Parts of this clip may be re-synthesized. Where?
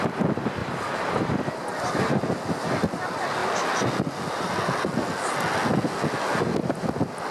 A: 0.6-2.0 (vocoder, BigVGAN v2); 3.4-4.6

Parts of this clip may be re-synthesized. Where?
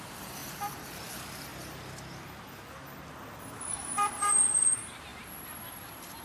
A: 0.0-1.5 (vocoder, BigVGAN v2); 3.4-6.2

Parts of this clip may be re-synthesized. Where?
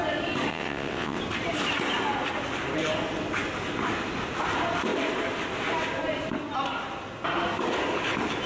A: 0.5-1.2 (vocoder, WaveNeXt)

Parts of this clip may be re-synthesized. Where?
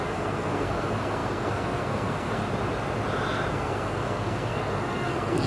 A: 0.0-2.4 (codec, SNAC); 3.5-5.5